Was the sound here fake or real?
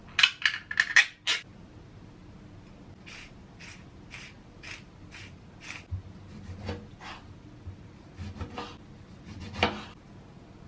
real